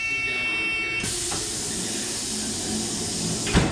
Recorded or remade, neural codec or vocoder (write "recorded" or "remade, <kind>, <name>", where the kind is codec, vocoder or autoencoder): recorded